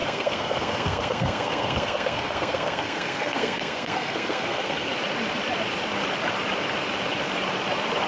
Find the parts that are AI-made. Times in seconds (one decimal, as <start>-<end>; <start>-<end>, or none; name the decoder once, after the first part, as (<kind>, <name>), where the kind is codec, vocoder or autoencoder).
0.0-4.9 (codec, SNAC)